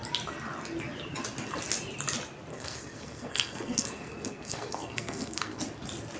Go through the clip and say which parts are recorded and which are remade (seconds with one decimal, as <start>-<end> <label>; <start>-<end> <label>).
0.0-2.5 recorded; 2.5-5.6 remade; 5.6-6.2 recorded